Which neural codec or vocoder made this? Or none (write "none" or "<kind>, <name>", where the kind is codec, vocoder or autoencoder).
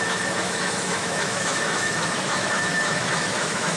autoencoder, DAC-VAE